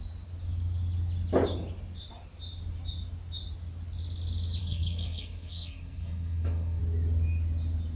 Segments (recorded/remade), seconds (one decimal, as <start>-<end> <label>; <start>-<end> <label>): 0.0-4.6 recorded; 4.6-6.8 remade; 6.8-8.0 recorded